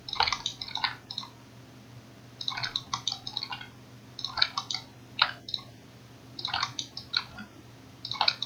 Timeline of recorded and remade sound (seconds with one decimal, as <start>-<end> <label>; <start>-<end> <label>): 0.0-0.5 remade; 0.5-5.4 recorded; 5.4-8.5 remade